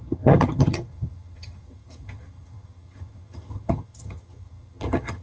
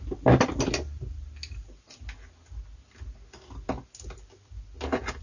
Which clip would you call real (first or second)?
second